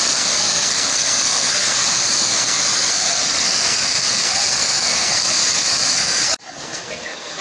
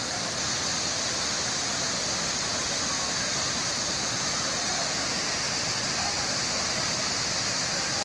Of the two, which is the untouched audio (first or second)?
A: second